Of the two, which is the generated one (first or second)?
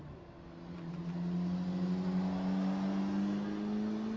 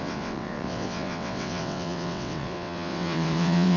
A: second